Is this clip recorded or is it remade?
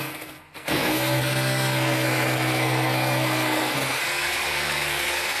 remade